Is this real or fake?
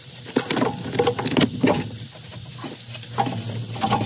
real